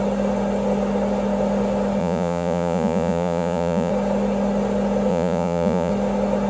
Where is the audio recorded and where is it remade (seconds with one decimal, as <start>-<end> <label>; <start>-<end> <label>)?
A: 0.0-2.0 recorded; 2.0-3.9 remade; 3.9-5.1 recorded; 5.1-5.9 remade; 5.9-6.5 recorded

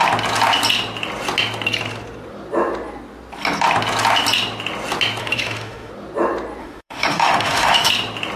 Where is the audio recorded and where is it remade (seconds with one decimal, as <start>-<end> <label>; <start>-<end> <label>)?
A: 0.0-5.2 recorded; 5.2-5.9 remade; 5.9-6.6 recorded; 6.6-7.9 remade; 7.9-8.4 recorded

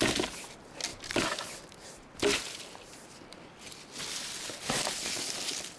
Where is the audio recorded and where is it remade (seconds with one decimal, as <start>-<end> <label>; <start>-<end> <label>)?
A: 0.0-5.8 recorded

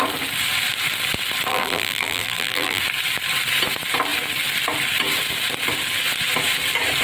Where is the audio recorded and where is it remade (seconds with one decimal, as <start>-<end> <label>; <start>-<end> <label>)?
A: 0.0-1.5 recorded; 1.5-2.8 remade; 2.8-7.0 recorded